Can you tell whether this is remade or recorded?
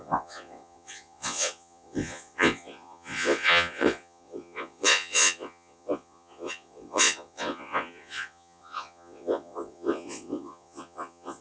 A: remade